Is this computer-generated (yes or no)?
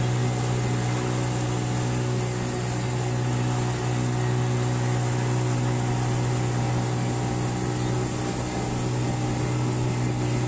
no